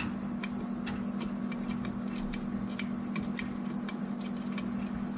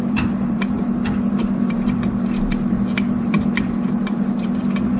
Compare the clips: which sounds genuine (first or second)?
first